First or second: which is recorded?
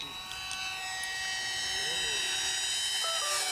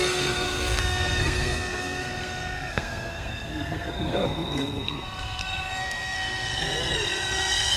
first